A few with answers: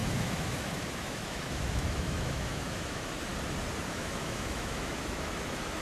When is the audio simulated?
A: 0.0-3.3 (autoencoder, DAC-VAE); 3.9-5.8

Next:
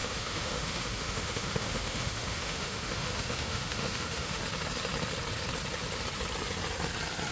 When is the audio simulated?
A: 0.0-4.4 (autoencoder, DAC-VAE)

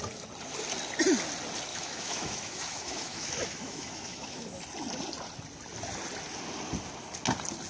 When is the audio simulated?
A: 1.7-4.6 (autoencoder, DAC-VAE)

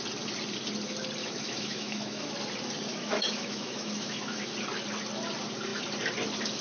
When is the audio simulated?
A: 1.2-2.3 (autoencoder, DAC-VAE); 2.9-4.5

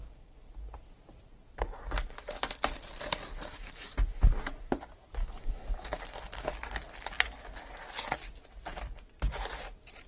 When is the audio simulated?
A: 3.3-3.9 (autoencoder, DAC-VAE); 5.2-6.5